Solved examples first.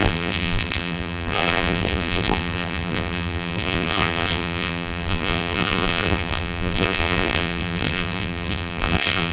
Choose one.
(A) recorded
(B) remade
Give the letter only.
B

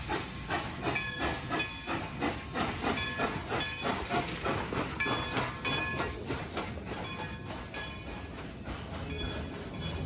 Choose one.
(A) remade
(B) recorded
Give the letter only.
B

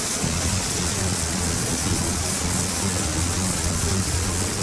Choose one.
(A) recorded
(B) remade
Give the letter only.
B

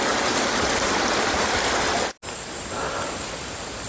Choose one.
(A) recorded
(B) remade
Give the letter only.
A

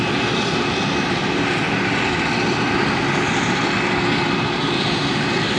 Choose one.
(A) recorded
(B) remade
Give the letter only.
A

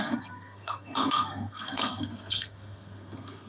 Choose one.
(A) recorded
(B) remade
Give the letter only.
B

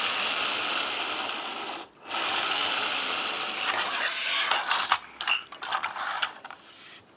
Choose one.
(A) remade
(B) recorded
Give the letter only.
B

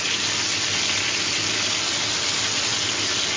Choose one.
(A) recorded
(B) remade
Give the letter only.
A